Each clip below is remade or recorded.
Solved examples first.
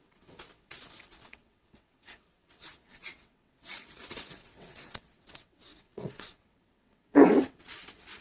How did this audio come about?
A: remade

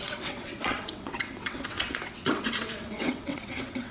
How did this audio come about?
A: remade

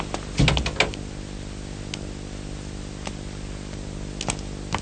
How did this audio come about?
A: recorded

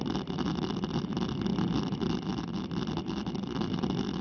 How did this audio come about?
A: recorded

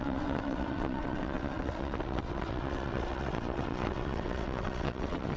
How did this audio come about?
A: remade